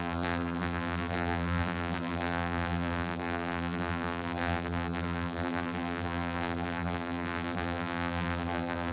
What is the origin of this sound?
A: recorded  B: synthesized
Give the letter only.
B